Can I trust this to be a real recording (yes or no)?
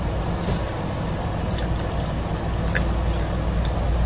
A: yes